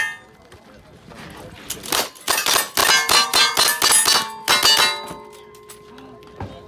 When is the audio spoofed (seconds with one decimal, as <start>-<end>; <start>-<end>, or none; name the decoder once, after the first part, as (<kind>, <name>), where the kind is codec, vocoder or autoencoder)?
none